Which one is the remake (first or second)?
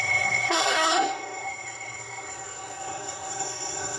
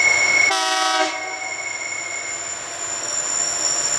first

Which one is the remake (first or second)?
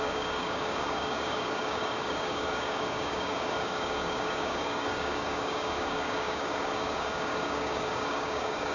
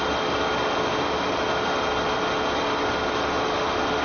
first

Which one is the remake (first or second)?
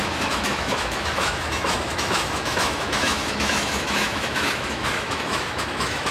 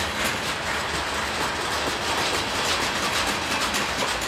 first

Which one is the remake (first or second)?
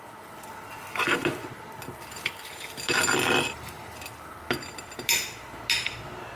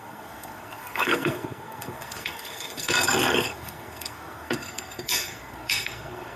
second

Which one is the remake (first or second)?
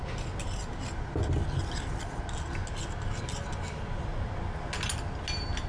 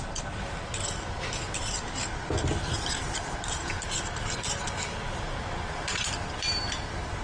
second